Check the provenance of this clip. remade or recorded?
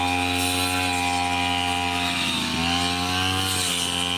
recorded